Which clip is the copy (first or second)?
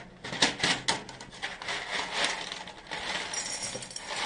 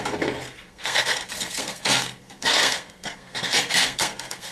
second